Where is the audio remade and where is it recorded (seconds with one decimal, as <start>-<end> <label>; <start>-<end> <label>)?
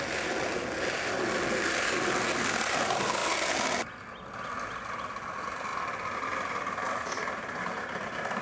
0.0-8.4 recorded